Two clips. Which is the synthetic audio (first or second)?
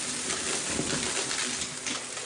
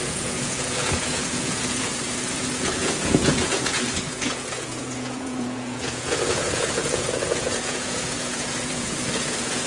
second